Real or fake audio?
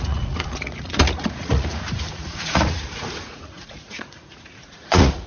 fake